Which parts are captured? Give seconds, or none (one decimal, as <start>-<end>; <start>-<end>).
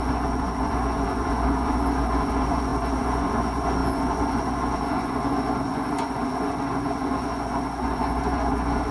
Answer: none